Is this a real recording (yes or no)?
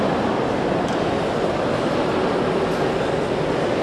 yes